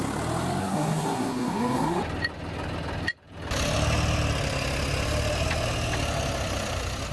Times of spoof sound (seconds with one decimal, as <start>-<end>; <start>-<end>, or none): 0.6-2.0